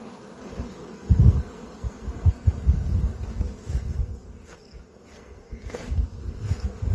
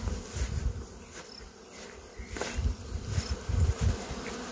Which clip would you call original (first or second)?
second